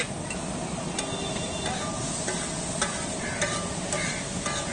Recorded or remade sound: recorded